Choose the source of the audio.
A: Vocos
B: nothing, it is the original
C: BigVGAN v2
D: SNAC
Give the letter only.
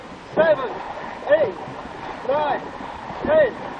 B